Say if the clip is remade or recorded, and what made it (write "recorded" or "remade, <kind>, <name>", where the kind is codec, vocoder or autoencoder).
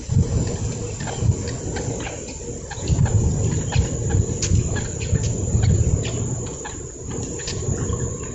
recorded